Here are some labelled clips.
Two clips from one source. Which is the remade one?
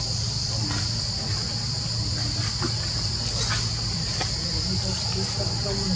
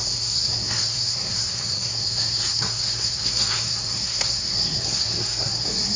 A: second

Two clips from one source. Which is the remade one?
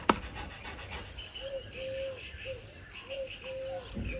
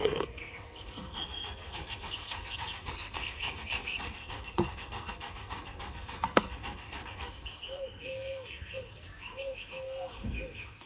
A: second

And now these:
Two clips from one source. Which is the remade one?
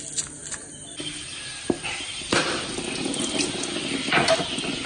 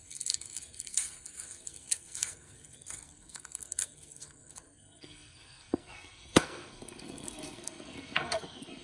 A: second